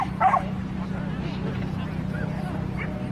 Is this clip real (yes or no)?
yes